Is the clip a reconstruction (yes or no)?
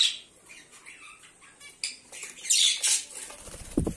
no